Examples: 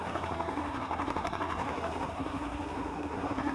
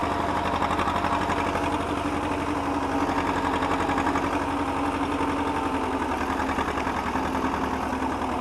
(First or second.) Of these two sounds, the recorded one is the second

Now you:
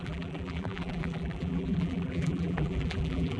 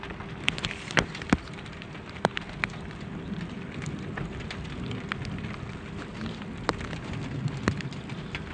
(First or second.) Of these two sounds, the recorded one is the second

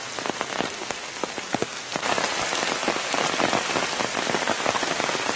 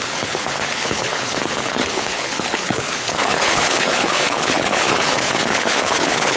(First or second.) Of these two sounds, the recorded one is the first